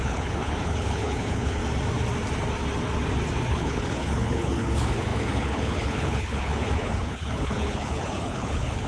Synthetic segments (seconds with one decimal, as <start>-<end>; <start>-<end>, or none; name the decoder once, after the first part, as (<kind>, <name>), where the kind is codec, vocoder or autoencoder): 0.0-1.6 (codec, HILCodec); 3.5-8.9